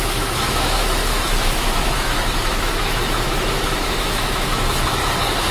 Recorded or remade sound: remade